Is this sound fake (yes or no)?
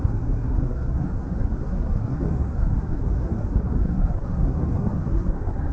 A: yes